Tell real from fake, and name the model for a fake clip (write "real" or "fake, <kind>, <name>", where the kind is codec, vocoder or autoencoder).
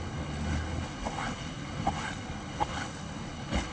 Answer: fake, codec, HILCodec